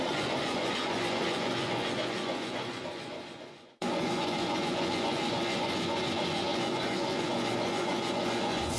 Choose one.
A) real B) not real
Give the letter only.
B